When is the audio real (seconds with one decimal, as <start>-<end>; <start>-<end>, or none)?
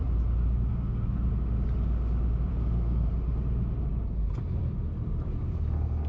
0.0-0.7; 1.3-2.5; 3.1-6.1